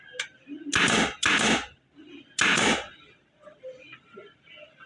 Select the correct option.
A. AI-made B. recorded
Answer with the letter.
B